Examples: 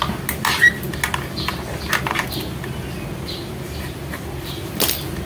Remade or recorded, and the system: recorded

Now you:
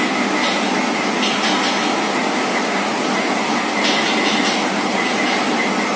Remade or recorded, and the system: recorded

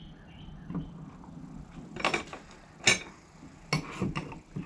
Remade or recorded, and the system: recorded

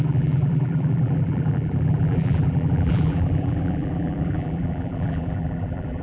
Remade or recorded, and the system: remade, vocoder, BigVGAN v2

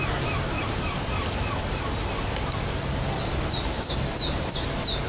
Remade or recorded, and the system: recorded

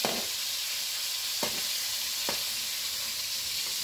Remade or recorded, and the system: recorded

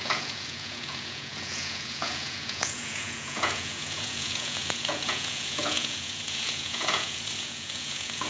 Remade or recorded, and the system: remade, vocoder, Vocos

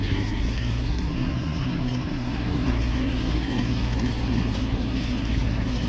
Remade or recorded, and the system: remade, codec, SNAC